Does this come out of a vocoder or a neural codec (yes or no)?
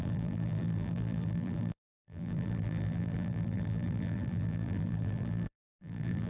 yes